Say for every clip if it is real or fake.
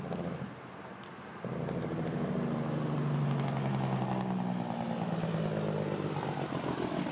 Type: real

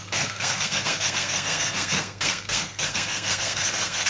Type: fake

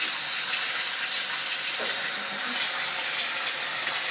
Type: real